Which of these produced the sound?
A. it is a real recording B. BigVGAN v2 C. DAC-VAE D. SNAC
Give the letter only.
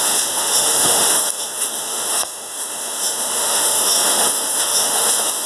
C